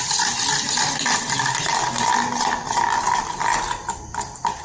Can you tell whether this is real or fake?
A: real